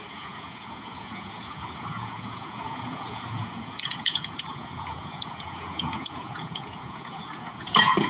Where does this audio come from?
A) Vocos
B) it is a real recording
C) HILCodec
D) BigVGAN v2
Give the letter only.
A